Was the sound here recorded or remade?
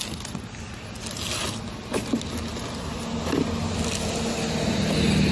recorded